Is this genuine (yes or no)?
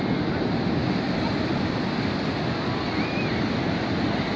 yes